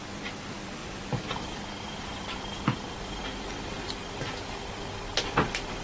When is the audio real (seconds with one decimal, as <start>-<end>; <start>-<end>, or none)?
0.0-0.8; 3.2-5.8